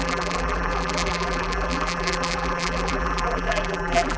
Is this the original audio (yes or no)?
no